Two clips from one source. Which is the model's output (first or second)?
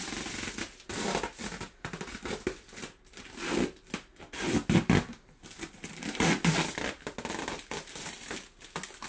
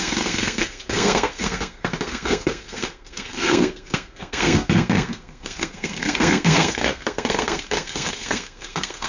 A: second